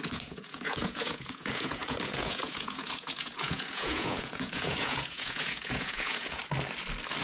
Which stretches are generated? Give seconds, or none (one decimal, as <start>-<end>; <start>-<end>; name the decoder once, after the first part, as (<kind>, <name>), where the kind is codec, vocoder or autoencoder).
0.0-6.4 (vocoder, Vocos)